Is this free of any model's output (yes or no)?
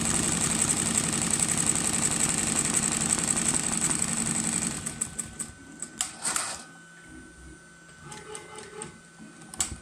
yes